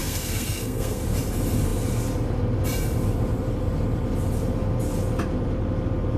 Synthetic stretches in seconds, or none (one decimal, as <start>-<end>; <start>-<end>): 0.0-1.0